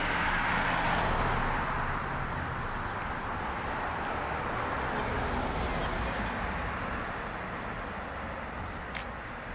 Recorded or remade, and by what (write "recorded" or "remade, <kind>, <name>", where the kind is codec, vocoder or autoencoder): recorded